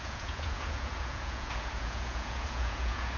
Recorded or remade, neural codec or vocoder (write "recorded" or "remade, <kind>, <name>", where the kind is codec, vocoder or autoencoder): remade, vocoder, Vocos